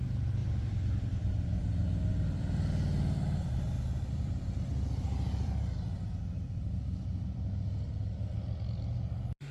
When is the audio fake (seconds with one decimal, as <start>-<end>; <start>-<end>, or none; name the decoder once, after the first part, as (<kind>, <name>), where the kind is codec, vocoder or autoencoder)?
0.4-1.6 (vocoder, BigVGAN v2); 2.1-5.6